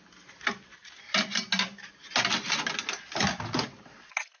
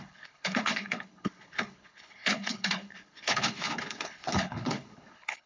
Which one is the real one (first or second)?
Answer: first